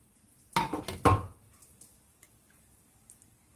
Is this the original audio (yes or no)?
yes